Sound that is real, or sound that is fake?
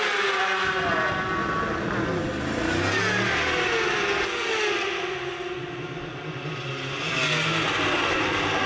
real